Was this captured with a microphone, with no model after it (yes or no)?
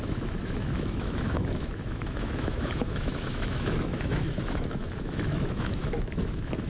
no